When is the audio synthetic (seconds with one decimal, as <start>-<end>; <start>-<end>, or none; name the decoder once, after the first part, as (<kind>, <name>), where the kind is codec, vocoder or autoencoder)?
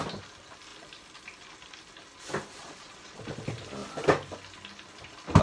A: 2.6-3.2 (vocoder, Vocos)